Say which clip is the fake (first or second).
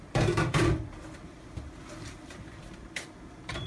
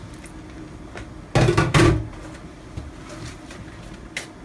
first